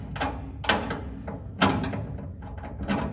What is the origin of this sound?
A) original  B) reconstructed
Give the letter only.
A